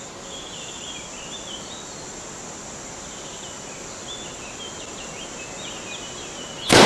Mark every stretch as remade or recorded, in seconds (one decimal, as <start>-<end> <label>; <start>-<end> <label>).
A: 0.0-6.9 recorded